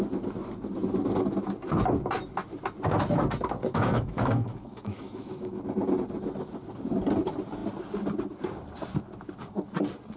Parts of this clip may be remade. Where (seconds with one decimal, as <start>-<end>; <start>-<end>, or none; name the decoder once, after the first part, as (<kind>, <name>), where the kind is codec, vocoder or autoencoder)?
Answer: 3.6-5.6 (autoencoder, DAC-VAE)